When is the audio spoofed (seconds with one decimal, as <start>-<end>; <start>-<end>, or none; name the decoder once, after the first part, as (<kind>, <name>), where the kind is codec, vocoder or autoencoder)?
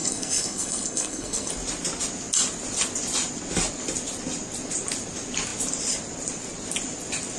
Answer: 0.0-1.5 (codec, SNAC)